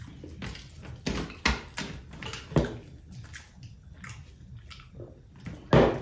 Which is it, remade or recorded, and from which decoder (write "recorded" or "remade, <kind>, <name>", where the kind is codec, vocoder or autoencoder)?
recorded